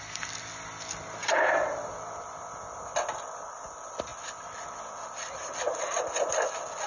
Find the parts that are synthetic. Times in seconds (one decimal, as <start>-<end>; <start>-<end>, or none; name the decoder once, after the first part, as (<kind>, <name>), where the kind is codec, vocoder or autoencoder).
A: 1.2-2.8 (vocoder, BigVGAN v2)